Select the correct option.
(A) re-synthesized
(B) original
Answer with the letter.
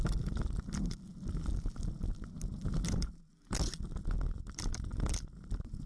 B